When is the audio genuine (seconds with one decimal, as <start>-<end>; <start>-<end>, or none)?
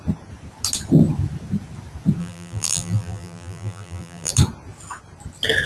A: 0.0-2.2; 4.3-5.7